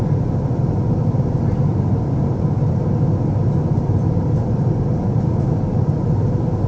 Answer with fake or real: real